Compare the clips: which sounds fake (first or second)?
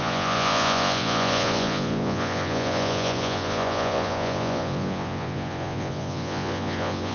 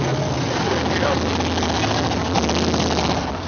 first